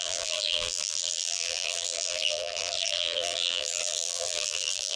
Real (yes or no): no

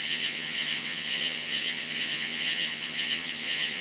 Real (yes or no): no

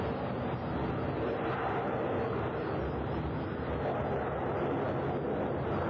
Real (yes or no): yes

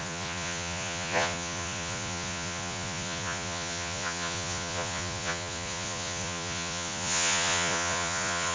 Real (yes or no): no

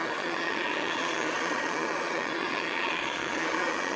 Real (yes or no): no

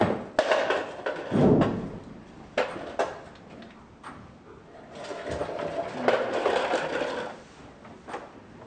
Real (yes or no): yes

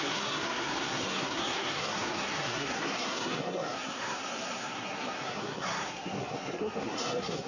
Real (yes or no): no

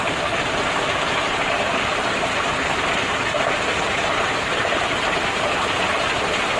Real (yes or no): no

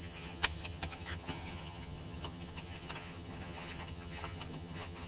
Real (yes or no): no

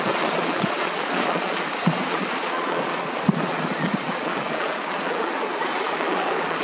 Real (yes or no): no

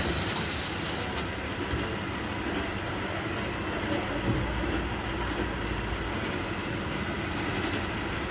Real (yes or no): yes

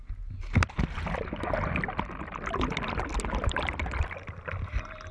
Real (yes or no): yes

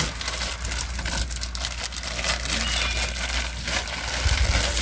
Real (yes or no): yes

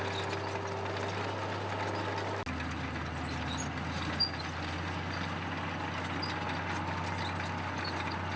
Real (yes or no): yes